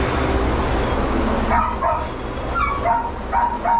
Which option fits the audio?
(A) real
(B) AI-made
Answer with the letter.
A